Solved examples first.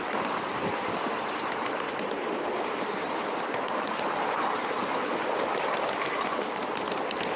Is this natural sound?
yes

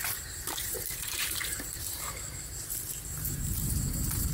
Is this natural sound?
no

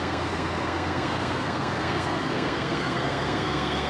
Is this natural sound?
no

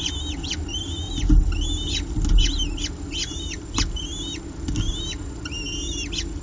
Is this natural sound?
yes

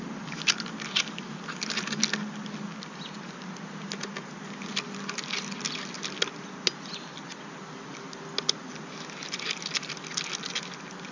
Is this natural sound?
yes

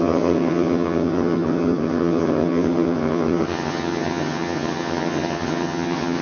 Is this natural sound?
no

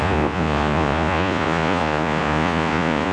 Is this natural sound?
no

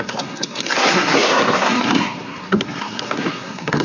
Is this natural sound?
no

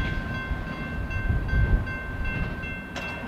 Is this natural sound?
yes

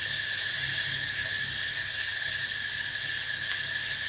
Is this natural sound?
yes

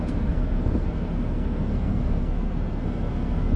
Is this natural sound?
no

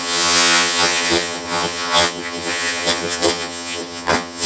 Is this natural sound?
no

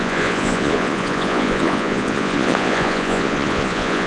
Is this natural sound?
no